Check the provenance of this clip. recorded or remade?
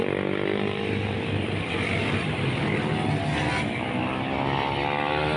recorded